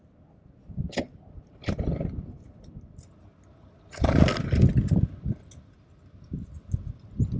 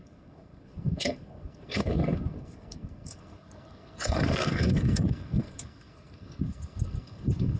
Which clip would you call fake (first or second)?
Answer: second